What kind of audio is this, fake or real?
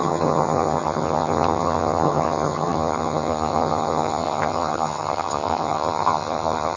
fake